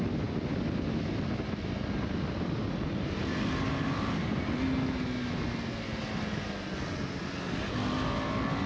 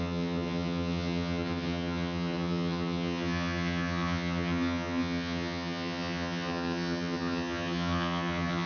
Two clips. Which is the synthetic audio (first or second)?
second